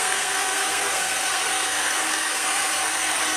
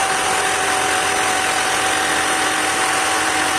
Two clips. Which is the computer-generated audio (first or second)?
first